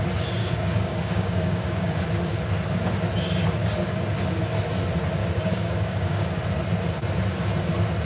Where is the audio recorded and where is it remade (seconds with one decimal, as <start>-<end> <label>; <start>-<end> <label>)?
0.0-0.4 recorded; 0.4-2.0 remade; 2.0-5.2 recorded; 5.2-6.4 remade; 6.4-8.0 recorded